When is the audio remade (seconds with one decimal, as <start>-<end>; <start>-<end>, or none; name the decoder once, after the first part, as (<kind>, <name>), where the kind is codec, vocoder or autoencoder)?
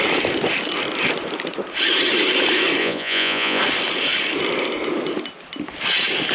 2.8-3.6 (vocoder, Vocos)